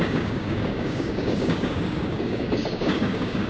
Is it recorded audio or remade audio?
remade